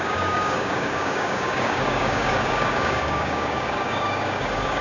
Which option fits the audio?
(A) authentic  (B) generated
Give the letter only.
B